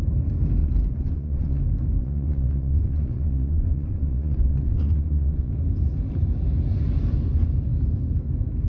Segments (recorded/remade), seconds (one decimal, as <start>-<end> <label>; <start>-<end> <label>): 0.0-0.6 recorded; 0.6-1.6 remade; 1.6-2.0 recorded; 2.0-5.5 remade; 5.5-8.7 recorded